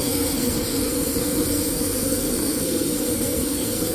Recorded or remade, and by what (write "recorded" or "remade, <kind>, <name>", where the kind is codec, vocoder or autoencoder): remade, codec, SNAC